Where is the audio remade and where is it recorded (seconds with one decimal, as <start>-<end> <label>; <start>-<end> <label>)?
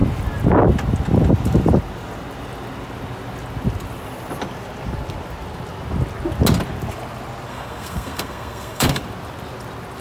0.0-7.5 recorded; 7.5-9.0 remade; 9.0-10.0 recorded